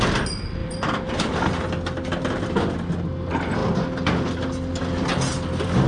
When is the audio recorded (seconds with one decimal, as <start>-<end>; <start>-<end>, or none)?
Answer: 0.0-0.6; 1.1-5.9